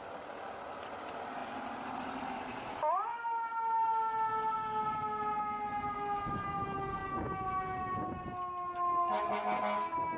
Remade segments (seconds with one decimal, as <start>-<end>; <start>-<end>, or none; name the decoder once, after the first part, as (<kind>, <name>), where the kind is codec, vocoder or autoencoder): none